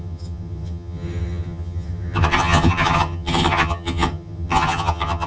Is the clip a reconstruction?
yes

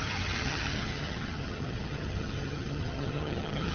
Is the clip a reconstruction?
yes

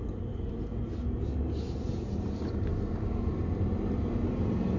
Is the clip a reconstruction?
no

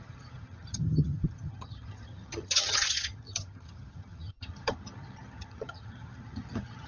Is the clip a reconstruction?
yes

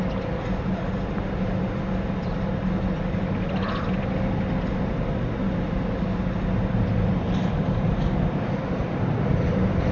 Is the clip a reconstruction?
no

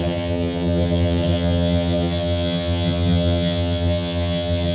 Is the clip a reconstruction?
yes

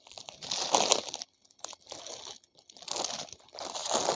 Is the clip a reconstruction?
no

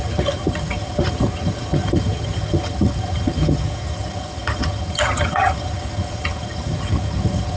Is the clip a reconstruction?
yes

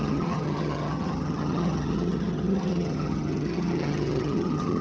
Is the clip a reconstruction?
yes